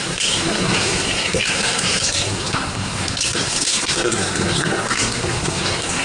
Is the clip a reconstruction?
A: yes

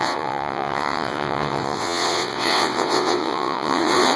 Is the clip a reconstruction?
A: yes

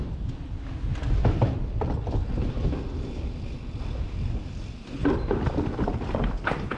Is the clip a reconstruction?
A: no